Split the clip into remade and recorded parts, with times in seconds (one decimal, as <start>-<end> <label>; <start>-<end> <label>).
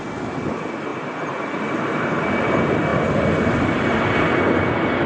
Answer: 0.0-2.9 recorded; 2.9-3.8 remade; 3.8-5.1 recorded